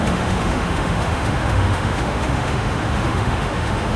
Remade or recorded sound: remade